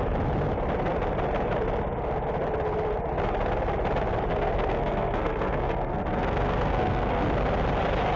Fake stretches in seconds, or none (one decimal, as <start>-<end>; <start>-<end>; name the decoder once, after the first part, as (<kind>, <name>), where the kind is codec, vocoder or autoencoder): 4.3-7.2 (codec, SNAC)